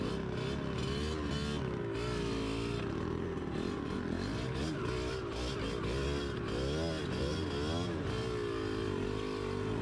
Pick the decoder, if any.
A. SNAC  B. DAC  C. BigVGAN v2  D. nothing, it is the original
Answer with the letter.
D